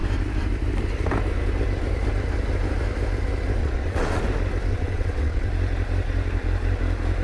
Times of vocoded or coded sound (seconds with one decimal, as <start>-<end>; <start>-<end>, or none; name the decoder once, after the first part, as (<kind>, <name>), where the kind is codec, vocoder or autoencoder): 3.6-4.2 (vocoder, WaveNeXt); 4.7-5.5